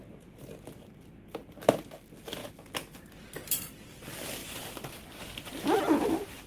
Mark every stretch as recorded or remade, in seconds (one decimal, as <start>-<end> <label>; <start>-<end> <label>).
0.0-4.4 recorded; 4.4-5.1 remade; 5.1-6.5 recorded